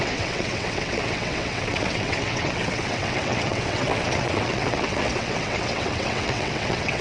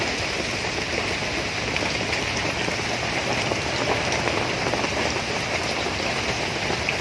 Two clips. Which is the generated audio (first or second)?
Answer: first